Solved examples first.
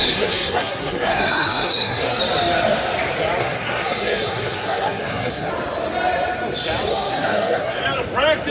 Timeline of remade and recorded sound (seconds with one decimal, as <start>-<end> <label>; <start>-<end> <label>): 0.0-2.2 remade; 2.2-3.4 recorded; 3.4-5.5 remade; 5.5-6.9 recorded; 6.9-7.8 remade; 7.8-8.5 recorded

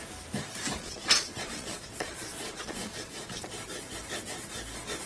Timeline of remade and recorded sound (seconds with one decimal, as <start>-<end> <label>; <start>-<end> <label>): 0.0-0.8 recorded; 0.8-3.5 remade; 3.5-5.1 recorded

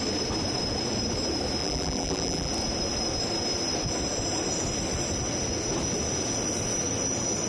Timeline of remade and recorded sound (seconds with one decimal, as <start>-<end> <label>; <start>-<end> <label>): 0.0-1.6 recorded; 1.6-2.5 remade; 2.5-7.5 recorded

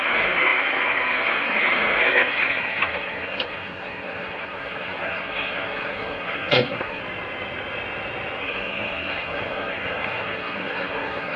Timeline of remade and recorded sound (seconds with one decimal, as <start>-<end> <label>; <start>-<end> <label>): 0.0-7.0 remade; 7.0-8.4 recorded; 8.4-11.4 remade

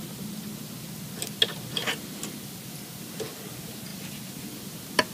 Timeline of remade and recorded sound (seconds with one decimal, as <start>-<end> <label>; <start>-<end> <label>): 0.0-5.1 recorded

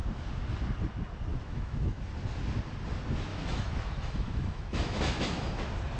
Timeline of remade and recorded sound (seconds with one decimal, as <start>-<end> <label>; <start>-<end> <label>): 0.0-1.3 recorded; 1.3-2.1 remade; 2.1-3.3 recorded; 3.3-5.6 remade; 5.6-6.0 recorded

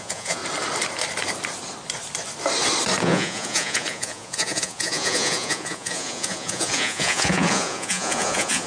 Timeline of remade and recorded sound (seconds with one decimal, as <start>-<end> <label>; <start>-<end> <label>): 0.0-0.4 remade; 0.4-3.0 recorded; 3.0-8.7 remade

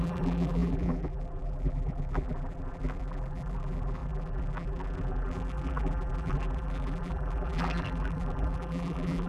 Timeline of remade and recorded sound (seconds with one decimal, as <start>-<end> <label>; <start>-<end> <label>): 0.0-9.3 remade